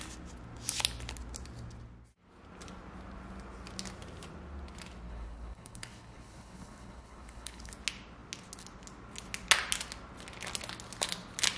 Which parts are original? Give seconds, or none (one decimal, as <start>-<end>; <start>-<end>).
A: 0.0-5.1; 7.7-11.6